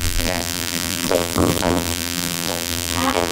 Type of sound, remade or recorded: remade